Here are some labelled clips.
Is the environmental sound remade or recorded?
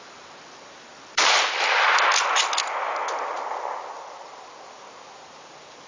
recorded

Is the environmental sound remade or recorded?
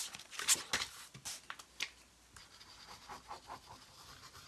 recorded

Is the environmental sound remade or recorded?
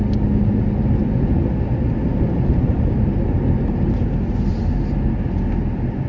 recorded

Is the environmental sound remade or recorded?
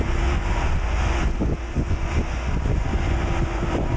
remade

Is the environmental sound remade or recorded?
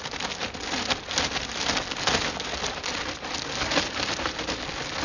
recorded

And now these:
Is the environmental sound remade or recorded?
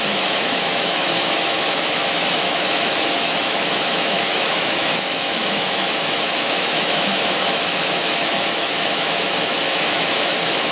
remade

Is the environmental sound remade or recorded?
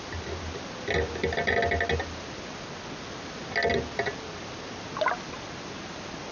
recorded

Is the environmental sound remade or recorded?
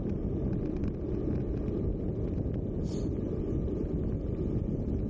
recorded